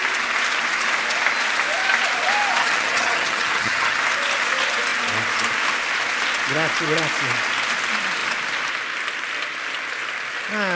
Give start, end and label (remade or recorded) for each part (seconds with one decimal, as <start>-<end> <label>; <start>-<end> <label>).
0.0-2.6 recorded; 2.6-4.0 remade; 4.0-10.8 recorded